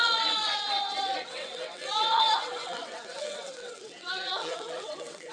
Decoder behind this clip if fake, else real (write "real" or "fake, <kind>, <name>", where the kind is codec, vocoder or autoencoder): fake, vocoder, WaveNeXt